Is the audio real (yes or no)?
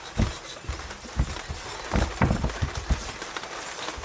yes